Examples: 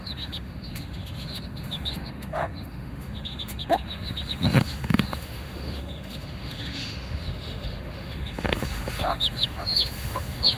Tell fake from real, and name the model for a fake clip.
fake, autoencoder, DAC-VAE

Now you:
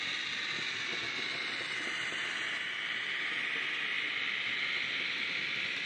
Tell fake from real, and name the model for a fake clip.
real